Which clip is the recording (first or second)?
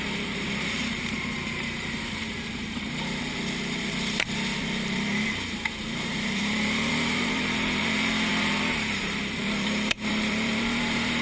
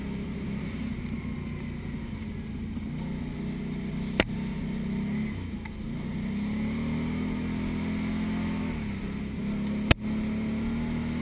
second